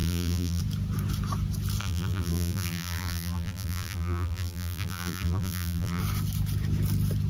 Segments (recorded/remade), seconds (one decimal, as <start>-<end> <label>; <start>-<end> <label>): 0.0-0.6 remade; 0.6-1.8 recorded; 1.8-6.0 remade; 6.0-7.3 recorded